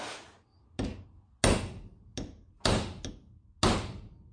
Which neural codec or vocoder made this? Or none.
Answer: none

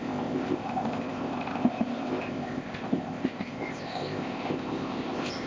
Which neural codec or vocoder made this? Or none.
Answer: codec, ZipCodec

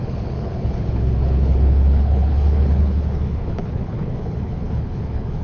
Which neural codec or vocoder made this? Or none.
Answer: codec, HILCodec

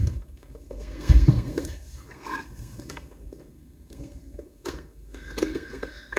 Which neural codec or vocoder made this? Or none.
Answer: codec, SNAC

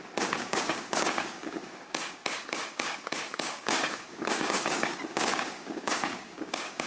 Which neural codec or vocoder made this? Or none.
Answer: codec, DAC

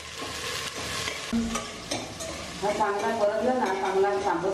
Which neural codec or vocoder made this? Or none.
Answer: none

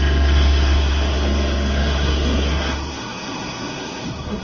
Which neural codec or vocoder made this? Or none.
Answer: codec, SNAC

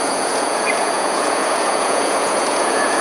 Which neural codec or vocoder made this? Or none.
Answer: vocoder, Vocos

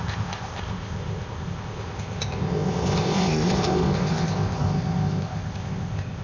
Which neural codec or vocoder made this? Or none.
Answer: codec, ZipCodec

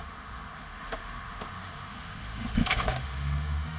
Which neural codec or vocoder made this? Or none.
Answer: autoencoder, DAC-VAE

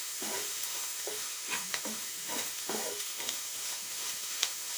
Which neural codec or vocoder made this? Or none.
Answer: autoencoder, DAC-VAE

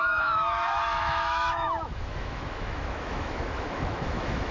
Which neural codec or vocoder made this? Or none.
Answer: autoencoder, DAC-VAE